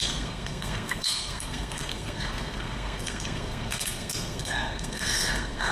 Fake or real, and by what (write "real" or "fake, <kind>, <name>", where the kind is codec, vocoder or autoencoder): fake, codec, SNAC